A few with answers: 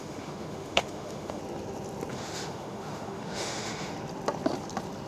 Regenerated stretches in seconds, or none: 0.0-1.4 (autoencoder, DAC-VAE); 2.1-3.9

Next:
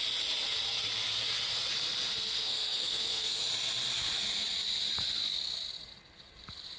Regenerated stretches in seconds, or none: 2.1-3.4 (codec, SNAC)

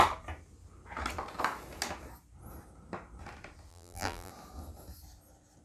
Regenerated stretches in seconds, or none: 3.7-4.3 (vocoder, BigVGAN v2)

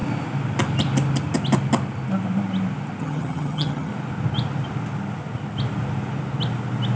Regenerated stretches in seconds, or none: 3.0-3.9 (vocoder, HiFi-GAN)